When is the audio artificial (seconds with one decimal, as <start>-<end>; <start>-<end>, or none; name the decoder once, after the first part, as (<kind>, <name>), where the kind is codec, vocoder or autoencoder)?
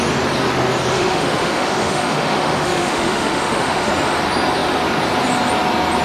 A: 0.9-3.9 (autoencoder, DAC-VAE)